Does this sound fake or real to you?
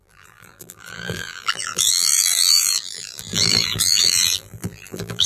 fake